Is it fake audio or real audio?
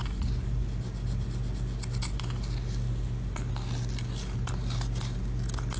real